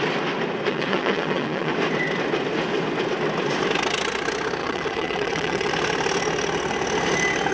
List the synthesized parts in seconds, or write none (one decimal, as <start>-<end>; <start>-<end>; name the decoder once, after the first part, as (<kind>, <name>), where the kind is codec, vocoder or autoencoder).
0.7-1.7 (vocoder, WaveNeXt); 4.6-5.7